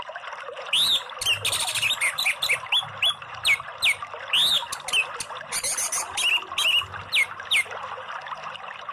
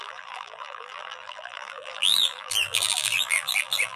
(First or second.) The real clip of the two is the first